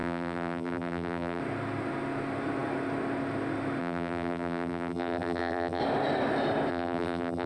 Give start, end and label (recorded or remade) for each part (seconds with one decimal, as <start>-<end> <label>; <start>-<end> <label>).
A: 0.0-1.4 remade; 1.4-3.8 recorded; 3.8-5.8 remade; 5.8-6.7 recorded; 6.7-7.5 remade